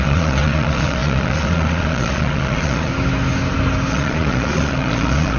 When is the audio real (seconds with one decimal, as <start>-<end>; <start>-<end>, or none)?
2.9-3.9